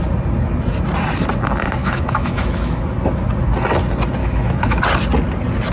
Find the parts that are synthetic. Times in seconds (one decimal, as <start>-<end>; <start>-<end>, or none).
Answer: 1.8-2.8; 4.2-4.8